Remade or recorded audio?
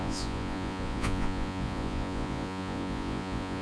remade